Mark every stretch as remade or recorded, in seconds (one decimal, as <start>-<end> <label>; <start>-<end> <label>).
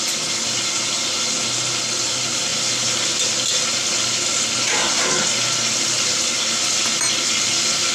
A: 0.0-7.9 recorded